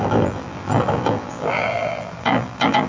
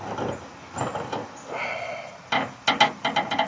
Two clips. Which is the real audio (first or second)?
second